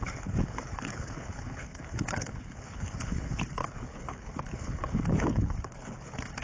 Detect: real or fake fake